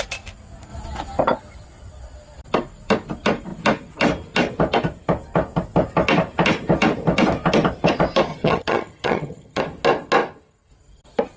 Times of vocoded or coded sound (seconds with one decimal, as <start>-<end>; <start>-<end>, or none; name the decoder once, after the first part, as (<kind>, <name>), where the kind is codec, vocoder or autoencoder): 8.3-9.6 (vocoder, HiFi-GAN)